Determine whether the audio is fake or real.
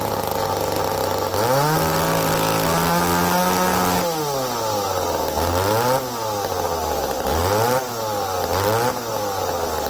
real